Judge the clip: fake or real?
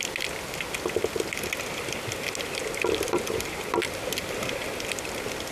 real